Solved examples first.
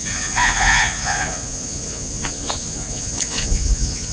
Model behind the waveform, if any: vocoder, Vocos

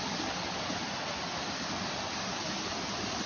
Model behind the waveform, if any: none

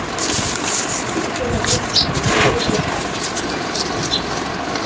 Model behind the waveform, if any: none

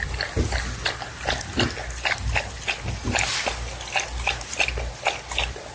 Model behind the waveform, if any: none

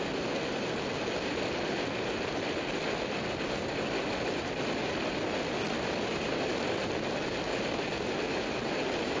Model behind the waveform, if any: none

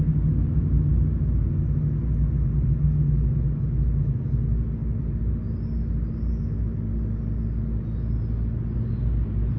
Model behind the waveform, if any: none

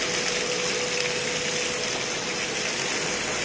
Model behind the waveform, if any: none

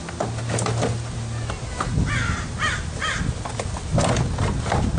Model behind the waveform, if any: none